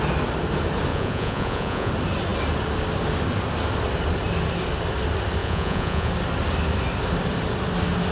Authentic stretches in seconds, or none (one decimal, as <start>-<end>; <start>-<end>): 0.0-0.9; 1.9-5.4; 6.1-8.1